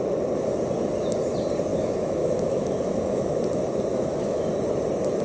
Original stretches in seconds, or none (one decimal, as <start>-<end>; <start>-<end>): 0.0-1.7; 3.4-3.9; 4.5-5.2